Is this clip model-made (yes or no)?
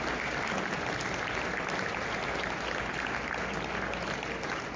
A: no